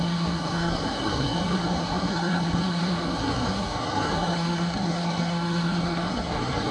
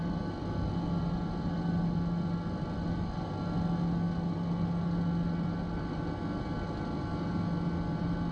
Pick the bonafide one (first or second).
second